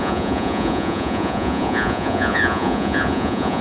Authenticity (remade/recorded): remade